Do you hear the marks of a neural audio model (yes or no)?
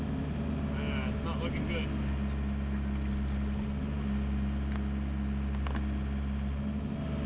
no